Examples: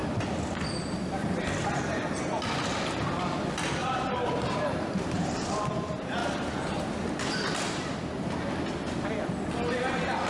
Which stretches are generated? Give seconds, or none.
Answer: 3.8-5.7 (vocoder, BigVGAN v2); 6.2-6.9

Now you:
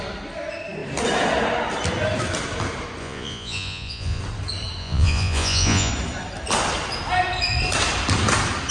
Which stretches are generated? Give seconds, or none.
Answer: 3.0-4.2 (vocoder, Vocos); 4.8-5.9